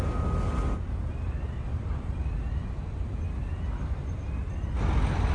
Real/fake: real